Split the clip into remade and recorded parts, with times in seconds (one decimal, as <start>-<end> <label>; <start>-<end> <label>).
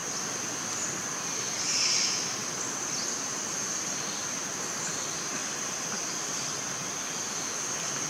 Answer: 0.0-8.1 recorded